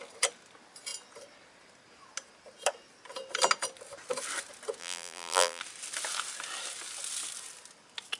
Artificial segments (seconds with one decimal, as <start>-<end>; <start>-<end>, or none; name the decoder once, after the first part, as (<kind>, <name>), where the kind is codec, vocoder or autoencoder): 4.8-5.6 (vocoder, BigVGAN v2)